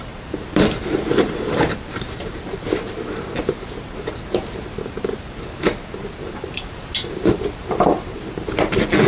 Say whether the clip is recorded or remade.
remade